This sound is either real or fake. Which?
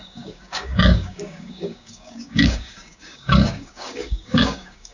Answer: fake